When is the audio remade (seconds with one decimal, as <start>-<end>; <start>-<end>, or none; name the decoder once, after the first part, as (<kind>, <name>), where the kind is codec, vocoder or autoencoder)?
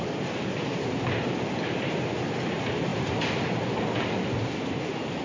2.9-5.2 (vocoder, BigVGAN v2)